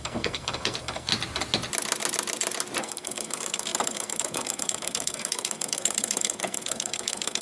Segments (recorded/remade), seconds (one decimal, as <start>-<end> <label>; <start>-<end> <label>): 0.0-1.1 remade; 1.1-2.8 recorded; 2.8-7.4 remade